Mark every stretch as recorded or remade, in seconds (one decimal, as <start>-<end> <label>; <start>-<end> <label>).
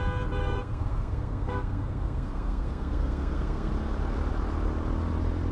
0.0-0.4 recorded; 0.4-3.7 remade; 3.7-5.5 recorded